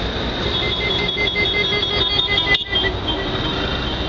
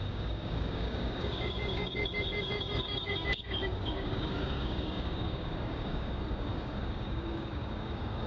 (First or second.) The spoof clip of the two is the second